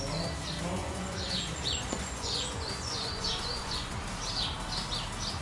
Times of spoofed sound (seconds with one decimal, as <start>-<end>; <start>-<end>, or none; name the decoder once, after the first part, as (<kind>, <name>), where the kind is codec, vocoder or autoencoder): 0.8-4.0 (vocoder, Vocos)